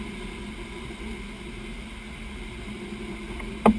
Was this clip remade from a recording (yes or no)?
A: no